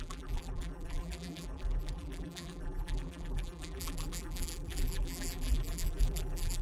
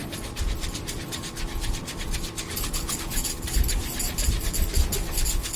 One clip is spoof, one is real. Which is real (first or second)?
second